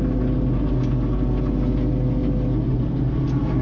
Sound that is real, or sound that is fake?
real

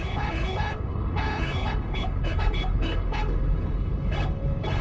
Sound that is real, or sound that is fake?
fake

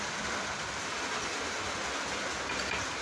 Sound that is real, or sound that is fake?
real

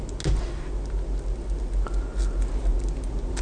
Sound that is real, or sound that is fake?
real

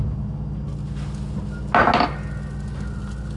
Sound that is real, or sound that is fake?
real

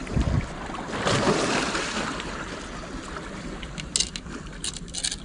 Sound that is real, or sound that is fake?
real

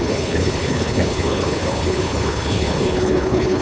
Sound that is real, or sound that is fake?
fake